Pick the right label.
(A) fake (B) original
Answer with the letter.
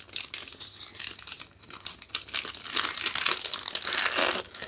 B